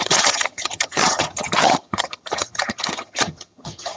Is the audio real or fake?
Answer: fake